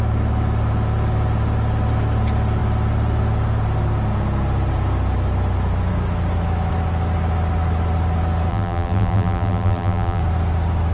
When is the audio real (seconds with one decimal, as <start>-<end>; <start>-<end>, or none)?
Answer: 0.0-8.5; 10.2-10.9